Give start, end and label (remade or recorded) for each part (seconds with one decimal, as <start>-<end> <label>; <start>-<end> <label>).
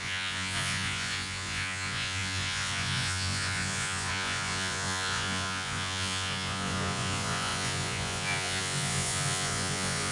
0.0-10.1 remade